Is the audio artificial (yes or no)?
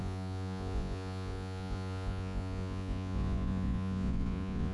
yes